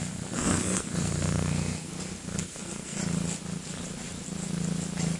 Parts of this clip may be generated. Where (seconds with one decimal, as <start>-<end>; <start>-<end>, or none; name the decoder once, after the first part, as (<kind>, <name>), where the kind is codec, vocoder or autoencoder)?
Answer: 0.0-1.9 (codec, SNAC); 2.4-3.0